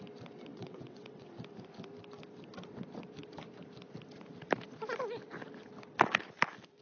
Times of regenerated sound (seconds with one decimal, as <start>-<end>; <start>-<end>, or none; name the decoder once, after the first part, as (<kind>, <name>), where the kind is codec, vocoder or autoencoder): 0.5-1.3 (vocoder, WaveNeXt)